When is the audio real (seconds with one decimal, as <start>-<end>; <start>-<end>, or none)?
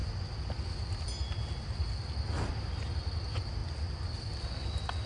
0.0-5.1